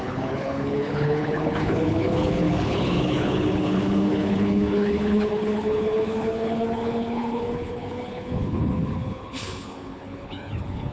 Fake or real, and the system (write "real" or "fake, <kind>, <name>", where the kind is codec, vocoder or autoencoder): fake, codec, HILCodec